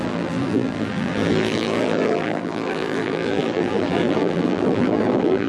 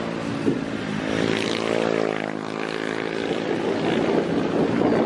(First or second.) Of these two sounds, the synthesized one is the first